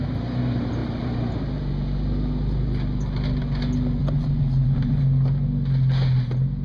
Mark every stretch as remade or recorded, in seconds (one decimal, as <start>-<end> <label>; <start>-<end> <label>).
0.0-0.8 recorded; 0.8-1.4 remade; 1.4-4.0 recorded; 4.0-5.0 remade; 5.0-6.6 recorded